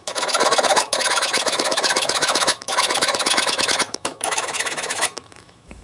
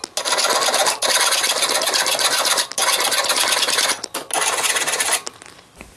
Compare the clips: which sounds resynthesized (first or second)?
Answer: first